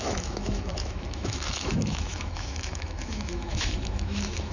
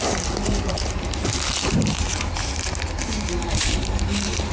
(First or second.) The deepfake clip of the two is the first